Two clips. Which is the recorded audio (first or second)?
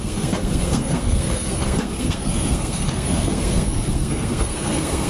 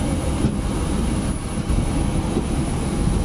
second